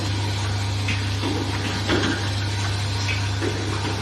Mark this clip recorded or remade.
recorded